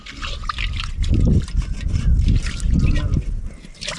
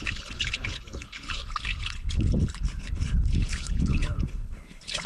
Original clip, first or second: first